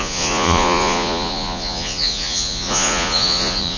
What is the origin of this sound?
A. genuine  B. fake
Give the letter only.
B